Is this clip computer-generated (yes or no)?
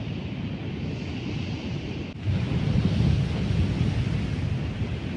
no